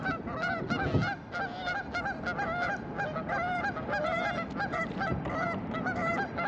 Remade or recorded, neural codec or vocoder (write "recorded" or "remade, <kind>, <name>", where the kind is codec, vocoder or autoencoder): recorded